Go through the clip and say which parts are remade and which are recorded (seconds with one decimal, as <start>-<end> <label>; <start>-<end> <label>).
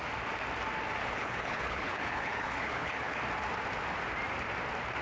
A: 0.0-1.0 recorded; 1.0-3.2 remade; 3.2-5.0 recorded